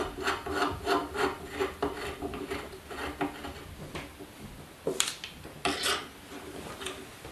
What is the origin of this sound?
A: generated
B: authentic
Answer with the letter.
B